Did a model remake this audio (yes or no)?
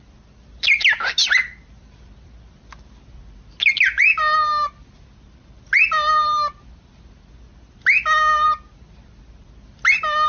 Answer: no